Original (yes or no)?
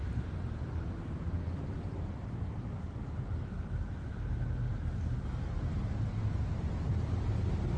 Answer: yes